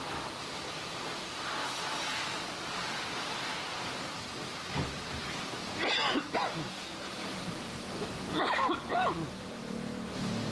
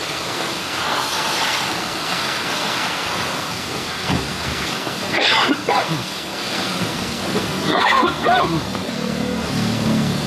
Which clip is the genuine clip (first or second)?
first